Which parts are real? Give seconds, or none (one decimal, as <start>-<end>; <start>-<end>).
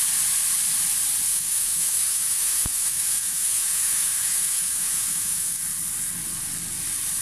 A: 0.0-1.3; 5.6-7.2